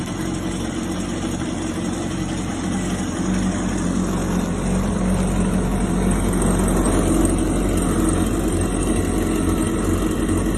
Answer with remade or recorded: recorded